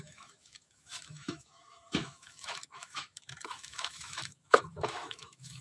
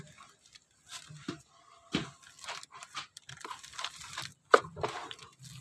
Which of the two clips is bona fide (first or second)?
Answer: second